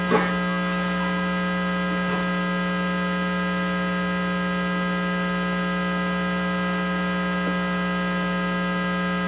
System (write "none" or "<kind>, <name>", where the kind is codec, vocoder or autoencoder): none